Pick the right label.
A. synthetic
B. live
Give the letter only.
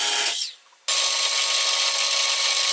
B